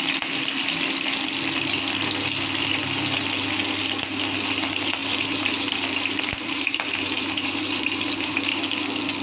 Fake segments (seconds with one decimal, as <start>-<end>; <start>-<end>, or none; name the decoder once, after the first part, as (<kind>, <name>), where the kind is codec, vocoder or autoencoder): 5.0-8.6 (vocoder, BigVGAN v2)